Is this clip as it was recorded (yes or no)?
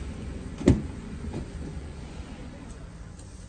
no